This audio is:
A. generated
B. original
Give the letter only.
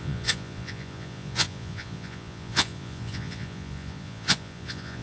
A